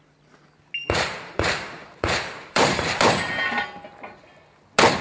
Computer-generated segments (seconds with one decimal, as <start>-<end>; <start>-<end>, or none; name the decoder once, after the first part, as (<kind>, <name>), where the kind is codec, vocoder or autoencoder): 0.8-3.2 (vocoder, BigVGAN v2)